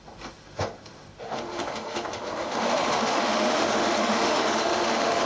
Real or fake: fake